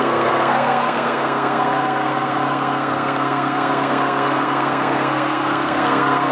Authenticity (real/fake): fake